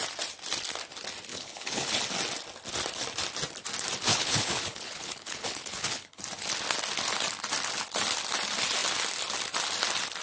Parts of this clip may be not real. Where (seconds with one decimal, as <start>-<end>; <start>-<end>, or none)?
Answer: 1.3-2.0; 4.1-6.2